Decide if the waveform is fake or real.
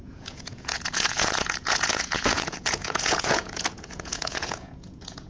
fake